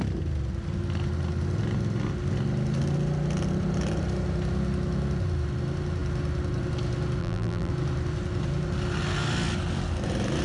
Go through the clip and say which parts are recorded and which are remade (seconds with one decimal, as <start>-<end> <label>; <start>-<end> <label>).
0.0-7.2 recorded; 7.2-7.7 remade; 7.7-10.4 recorded